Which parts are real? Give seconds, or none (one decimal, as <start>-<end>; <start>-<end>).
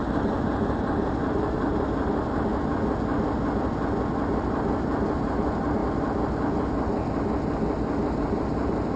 2.5-4.4; 5.8-8.1